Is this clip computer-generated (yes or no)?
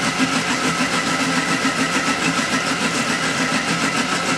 no